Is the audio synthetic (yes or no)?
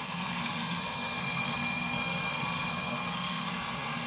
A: yes